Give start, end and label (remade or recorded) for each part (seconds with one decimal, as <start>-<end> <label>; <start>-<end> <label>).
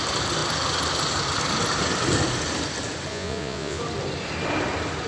0.0-3.1 recorded; 3.1-3.8 remade; 3.8-5.1 recorded